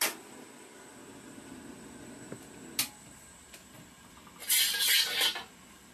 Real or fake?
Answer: real